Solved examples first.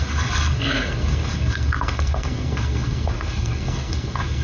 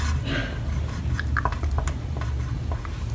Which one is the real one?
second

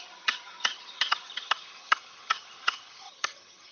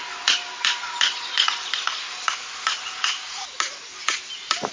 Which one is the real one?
second